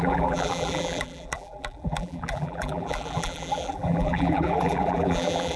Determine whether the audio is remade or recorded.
remade